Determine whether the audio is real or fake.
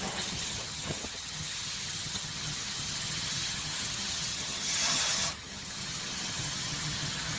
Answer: fake